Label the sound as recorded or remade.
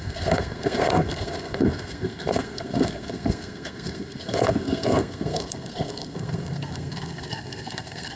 remade